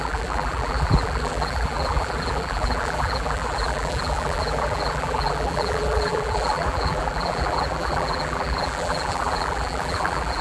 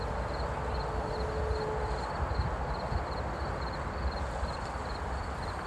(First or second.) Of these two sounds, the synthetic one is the first